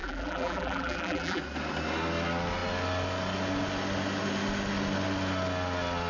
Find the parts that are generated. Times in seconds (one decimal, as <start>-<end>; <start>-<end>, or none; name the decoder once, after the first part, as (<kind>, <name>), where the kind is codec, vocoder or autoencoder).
0.0-1.4 (vocoder, BigVGAN v2)